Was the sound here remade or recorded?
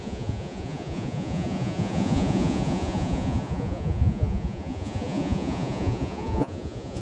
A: remade